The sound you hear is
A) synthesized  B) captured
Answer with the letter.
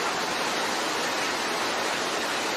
B